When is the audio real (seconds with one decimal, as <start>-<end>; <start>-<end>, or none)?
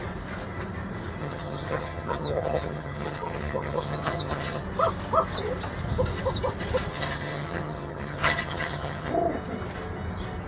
0.0-1.2; 4.6-6.9; 9.1-10.5